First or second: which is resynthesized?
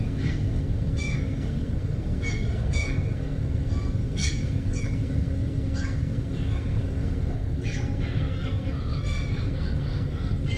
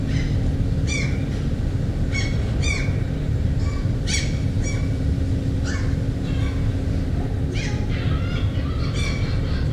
first